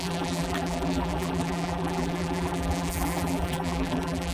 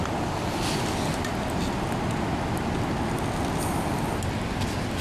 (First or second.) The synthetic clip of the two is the first